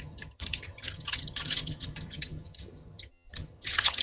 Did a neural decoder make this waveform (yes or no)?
yes